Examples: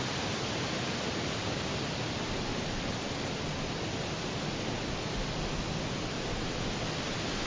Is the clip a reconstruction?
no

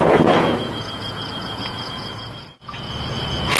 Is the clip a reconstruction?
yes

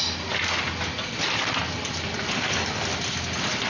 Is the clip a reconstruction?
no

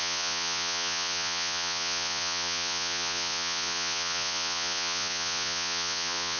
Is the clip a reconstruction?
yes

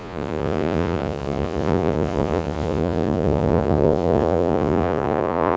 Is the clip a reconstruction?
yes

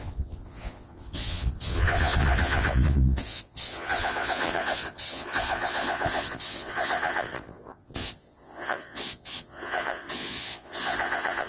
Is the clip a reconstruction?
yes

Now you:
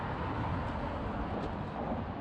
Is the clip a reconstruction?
no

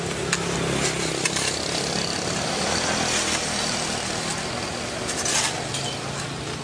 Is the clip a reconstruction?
no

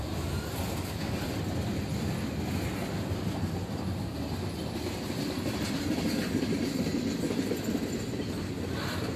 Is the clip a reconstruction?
no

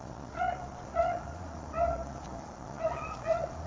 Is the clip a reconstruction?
yes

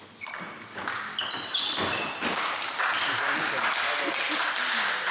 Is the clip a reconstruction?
no